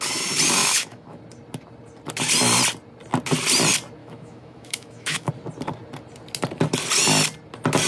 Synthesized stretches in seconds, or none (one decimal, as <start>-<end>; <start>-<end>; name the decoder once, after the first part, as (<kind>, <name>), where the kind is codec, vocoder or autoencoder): 0.6-1.2 (autoencoder, DAC-VAE); 4.0-5.3